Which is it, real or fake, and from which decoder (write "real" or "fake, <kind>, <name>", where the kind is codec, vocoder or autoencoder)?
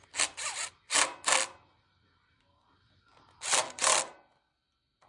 real